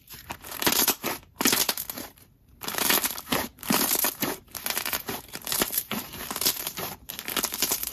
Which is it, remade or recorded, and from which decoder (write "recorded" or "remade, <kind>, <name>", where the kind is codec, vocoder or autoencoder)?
remade, vocoder, BigVGAN v2